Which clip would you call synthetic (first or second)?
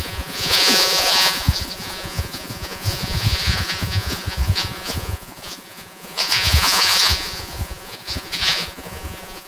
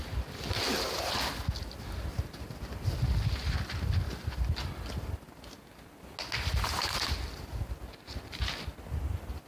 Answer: first